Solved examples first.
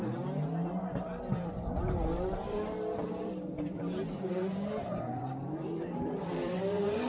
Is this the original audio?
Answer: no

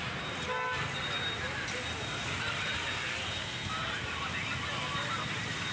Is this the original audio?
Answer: yes